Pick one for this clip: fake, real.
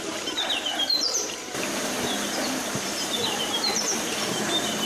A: fake